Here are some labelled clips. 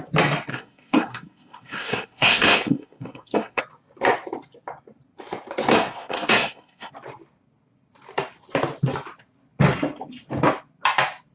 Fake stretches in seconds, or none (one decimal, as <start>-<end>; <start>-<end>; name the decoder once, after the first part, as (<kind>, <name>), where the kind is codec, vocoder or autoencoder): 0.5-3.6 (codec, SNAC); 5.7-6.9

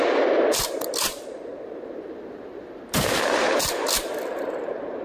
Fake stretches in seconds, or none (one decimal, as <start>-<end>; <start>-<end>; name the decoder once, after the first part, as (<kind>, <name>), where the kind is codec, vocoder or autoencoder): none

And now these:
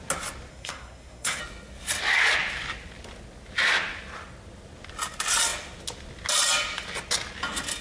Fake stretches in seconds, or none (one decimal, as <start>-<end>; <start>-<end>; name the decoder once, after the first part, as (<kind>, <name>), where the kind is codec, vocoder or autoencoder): 0.5-1.4 (codec, SNAC)

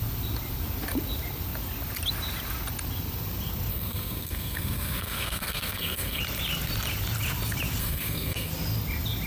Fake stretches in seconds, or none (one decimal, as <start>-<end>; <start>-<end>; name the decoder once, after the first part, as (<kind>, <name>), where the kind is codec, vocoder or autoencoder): 3.7-6.2 (codec, SNAC); 7.8-8.5

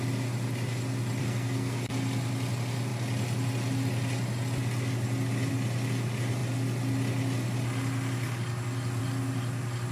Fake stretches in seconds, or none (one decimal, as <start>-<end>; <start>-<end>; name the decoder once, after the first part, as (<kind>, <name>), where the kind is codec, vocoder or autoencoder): 1.2-1.9 (codec, SNAC)

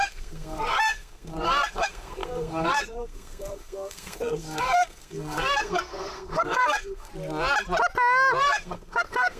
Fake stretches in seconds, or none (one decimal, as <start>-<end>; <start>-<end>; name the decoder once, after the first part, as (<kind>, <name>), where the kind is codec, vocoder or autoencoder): 0.0-7.1 (codec, SNAC); 8.4-9.4